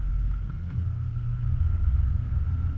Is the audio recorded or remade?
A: remade